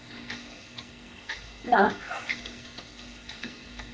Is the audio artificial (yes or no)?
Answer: yes